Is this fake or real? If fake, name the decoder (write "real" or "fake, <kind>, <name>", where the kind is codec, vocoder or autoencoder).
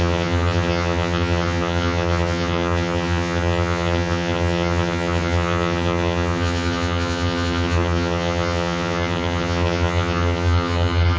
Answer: fake, vocoder, HiFi-GAN